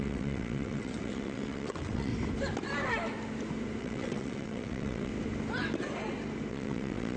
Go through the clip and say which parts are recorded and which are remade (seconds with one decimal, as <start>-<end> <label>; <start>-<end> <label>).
0.0-2.1 remade; 2.1-3.8 recorded; 3.8-5.1 remade; 5.1-6.5 recorded; 6.5-7.2 remade